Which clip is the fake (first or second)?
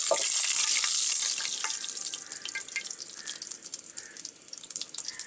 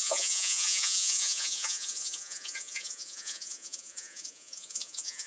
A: second